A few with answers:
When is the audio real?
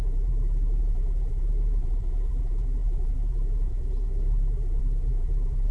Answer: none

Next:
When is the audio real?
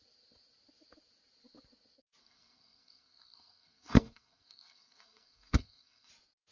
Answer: 0.0-2.2; 6.1-6.5